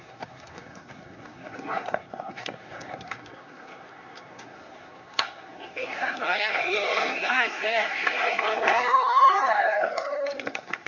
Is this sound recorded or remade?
remade